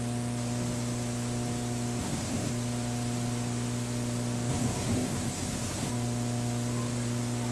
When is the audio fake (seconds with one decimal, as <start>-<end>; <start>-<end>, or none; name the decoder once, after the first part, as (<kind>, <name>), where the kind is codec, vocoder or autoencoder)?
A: 2.0-2.5 (codec, SNAC); 4.5-5.9